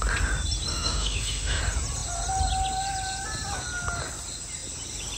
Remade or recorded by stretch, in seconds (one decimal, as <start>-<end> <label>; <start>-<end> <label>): 0.0-0.7 recorded; 0.7-1.6 remade; 1.6-5.2 recorded